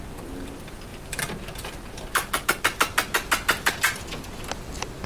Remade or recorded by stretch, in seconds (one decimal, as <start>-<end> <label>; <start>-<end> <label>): 0.0-5.1 recorded